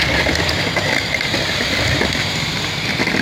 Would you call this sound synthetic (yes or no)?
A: no